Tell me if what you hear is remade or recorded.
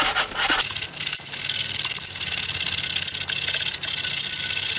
recorded